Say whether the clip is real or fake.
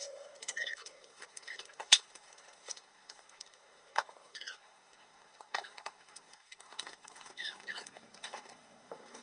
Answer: fake